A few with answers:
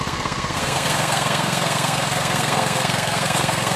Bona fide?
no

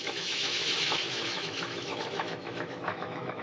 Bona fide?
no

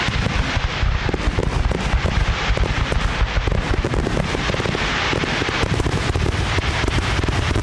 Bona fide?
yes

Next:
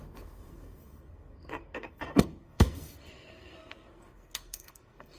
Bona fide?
no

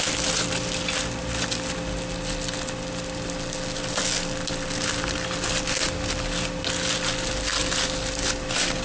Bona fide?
yes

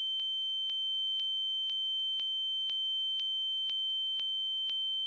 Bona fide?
yes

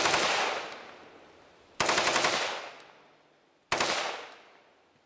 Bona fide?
yes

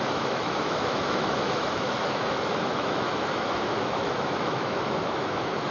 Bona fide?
no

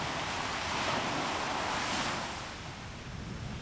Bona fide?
yes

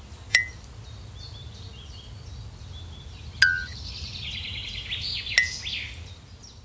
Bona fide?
yes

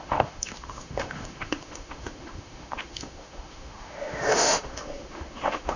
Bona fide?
no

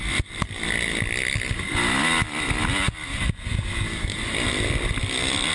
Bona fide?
yes